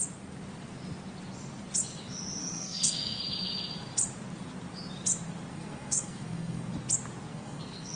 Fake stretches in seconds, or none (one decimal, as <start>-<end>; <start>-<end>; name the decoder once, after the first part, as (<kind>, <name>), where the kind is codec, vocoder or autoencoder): 2.4-3.2 (codec, SNAC); 5.5-6.7; 7.3-8.0